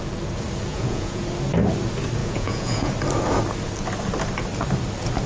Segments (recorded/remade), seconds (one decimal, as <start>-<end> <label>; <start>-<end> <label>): 0.0-0.7 recorded; 0.7-1.2 remade; 1.2-2.2 recorded; 2.2-2.9 remade; 2.9-5.3 recorded